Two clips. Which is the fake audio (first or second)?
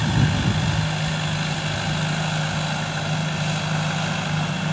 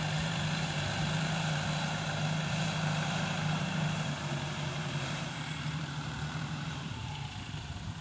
second